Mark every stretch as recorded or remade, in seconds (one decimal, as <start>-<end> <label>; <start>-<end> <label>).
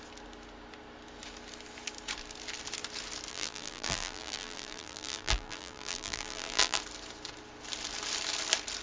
0.0-3.3 recorded; 3.3-6.8 remade; 6.8-8.8 recorded